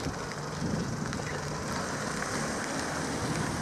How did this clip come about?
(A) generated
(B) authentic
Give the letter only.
B